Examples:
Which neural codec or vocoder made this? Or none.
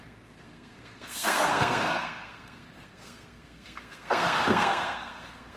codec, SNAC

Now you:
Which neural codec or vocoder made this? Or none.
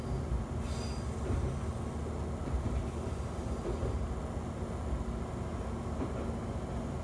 none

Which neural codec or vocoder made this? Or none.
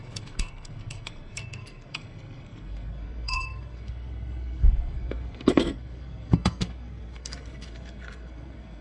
codec, SNAC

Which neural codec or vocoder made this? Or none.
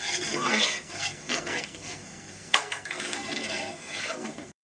codec, SNAC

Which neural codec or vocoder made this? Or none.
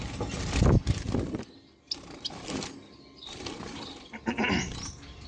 none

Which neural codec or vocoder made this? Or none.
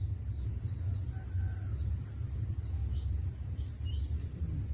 none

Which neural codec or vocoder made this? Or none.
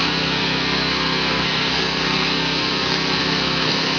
codec, SNAC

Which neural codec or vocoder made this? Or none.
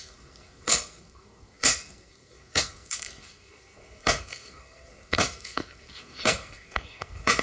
codec, SNAC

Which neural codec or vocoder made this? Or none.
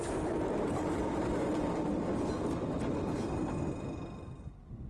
none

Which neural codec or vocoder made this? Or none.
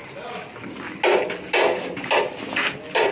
none